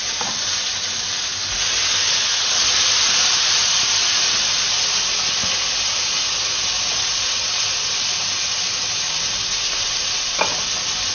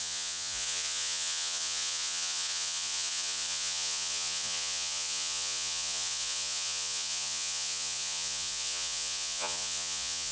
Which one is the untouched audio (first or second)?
first